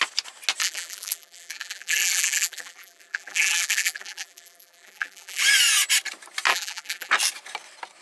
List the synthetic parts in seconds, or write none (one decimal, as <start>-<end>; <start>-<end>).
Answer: 0.6-5.4; 6.5-7.1